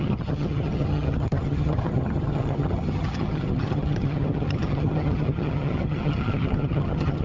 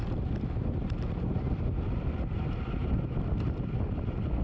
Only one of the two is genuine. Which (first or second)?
second